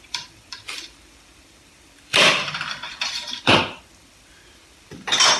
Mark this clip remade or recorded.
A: remade